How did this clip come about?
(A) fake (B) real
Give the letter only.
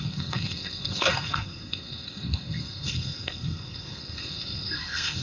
A